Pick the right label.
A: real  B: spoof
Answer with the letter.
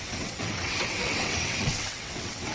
B